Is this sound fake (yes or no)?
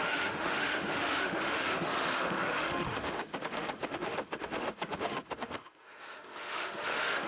yes